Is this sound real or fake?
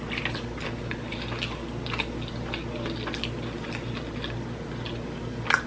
real